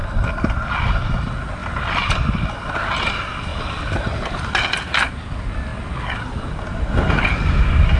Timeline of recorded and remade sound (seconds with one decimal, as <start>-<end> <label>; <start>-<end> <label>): 0.0-8.0 recorded